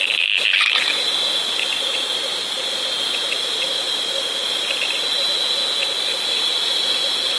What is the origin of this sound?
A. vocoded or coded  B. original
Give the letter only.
B